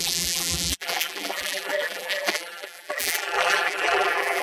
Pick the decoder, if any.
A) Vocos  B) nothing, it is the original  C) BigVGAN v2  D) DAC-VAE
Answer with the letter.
C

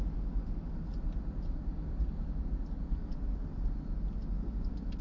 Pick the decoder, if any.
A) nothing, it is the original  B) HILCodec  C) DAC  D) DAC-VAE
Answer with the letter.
A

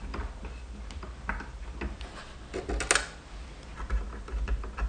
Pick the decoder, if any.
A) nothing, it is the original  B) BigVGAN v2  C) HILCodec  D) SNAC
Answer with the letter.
A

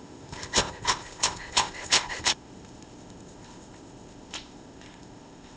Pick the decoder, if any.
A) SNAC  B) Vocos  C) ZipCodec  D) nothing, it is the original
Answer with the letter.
C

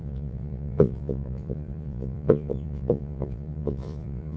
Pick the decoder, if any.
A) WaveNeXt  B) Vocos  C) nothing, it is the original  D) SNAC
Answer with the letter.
B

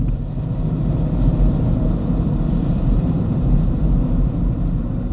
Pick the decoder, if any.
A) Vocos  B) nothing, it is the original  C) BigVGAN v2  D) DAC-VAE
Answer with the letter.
C